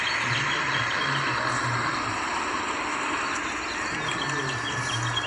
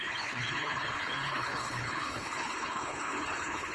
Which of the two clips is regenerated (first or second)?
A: second